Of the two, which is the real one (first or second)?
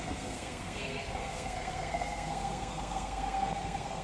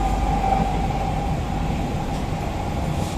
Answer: second